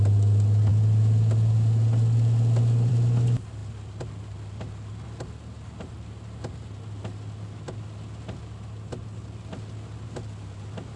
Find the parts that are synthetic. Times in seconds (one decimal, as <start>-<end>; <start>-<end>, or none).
none